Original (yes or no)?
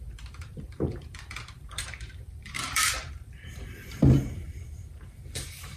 no